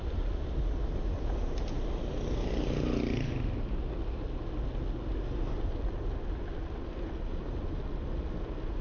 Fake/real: real